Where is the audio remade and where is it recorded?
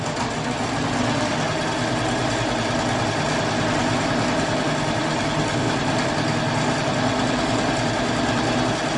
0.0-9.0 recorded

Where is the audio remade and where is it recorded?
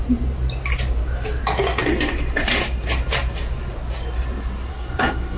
0.0-4.7 recorded; 4.7-5.4 remade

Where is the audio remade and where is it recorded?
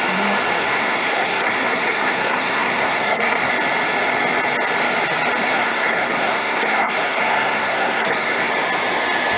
0.0-0.6 recorded; 0.6-3.5 remade; 3.5-5.4 recorded; 5.4-8.5 remade; 8.5-9.4 recorded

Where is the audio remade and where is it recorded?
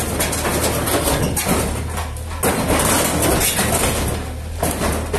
0.0-5.2 recorded